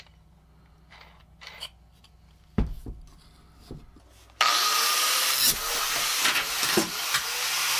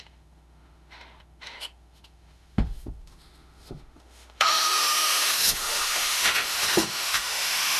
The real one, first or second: first